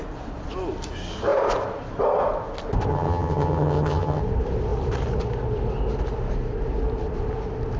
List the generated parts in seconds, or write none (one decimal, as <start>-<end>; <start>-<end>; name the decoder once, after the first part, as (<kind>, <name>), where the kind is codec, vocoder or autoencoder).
2.9-4.2 (vocoder, HiFi-GAN)